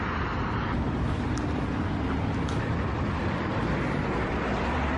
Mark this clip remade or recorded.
recorded